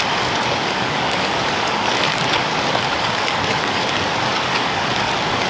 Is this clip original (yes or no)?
no